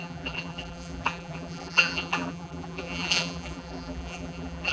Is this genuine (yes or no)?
no